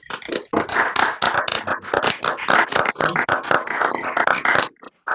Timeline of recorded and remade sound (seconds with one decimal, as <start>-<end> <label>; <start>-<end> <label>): 0.0-5.1 recorded